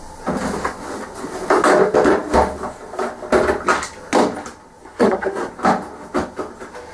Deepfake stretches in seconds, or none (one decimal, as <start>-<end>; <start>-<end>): 4.8-5.5